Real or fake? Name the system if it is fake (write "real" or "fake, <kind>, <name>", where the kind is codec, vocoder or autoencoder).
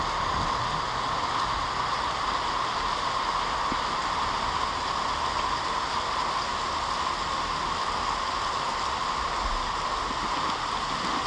real